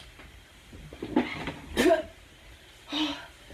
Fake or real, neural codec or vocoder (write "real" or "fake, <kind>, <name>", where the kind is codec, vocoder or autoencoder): real